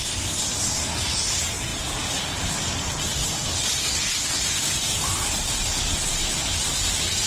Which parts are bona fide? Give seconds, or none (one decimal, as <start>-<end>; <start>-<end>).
0.0-6.1; 6.8-7.3